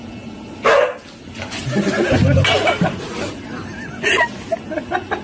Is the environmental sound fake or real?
real